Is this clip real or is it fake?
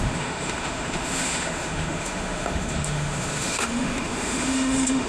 fake